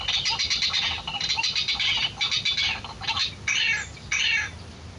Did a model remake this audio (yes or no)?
no